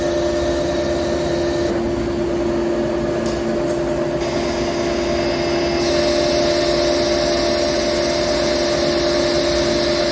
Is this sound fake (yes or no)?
no